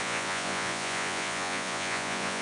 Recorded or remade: remade